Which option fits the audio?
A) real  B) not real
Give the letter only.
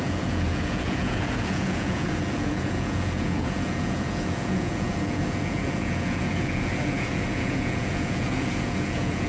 B